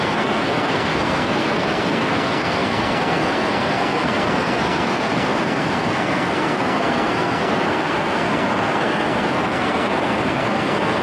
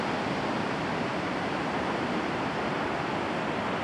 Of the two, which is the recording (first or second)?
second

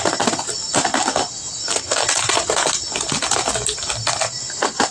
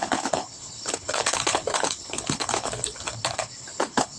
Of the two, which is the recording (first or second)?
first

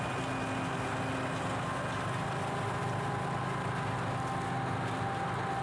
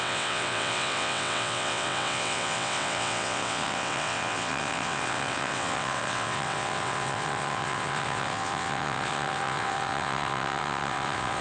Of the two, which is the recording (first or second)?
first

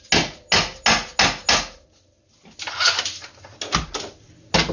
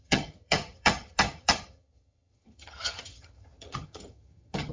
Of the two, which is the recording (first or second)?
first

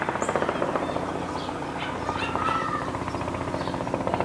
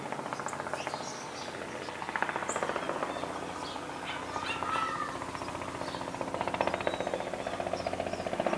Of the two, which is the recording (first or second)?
second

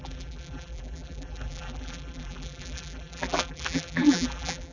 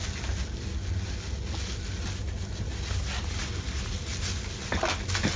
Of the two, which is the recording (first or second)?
second